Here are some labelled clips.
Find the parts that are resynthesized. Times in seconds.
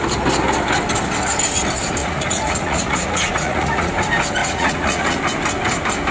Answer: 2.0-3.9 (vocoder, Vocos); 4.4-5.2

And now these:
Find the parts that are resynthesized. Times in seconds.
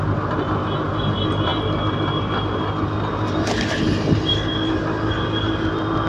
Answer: none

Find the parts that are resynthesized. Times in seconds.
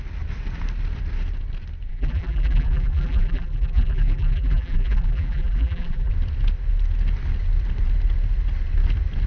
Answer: 1.9-6.1 (vocoder, BigVGAN v2)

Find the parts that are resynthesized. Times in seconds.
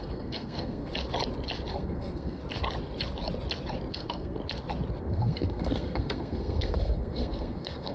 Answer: 0.0-0.9 (codec, SNAC); 1.7-2.4; 3.9-4.4; 5.0-7.9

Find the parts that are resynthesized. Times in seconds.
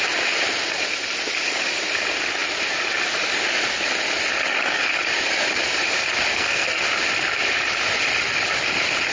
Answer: 6.3-6.8 (codec, SNAC)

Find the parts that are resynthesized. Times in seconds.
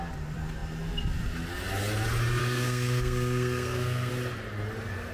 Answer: 2.4-4.1 (codec, SNAC)